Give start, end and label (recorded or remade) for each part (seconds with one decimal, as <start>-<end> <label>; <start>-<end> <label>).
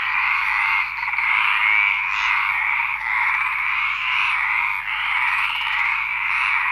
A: 0.0-1.6 remade; 1.6-2.5 recorded; 2.5-6.7 remade